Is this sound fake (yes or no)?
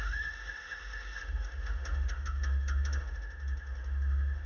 yes